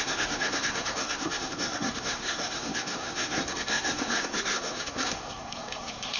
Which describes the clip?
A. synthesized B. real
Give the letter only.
A